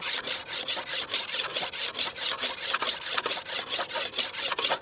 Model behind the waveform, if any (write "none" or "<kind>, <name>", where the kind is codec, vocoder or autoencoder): none